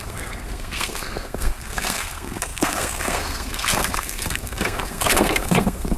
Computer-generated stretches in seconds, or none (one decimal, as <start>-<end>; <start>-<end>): 0.0-6.0